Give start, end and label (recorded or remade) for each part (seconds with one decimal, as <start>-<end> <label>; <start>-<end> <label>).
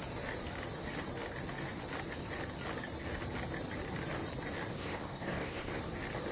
0.0-4.7 recorded; 4.7-5.8 remade; 5.8-6.3 recorded